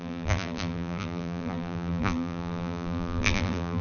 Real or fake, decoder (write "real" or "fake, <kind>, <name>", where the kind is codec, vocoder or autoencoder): fake, vocoder, BigVGAN v2